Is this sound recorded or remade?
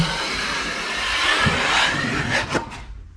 recorded